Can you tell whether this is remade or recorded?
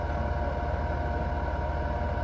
recorded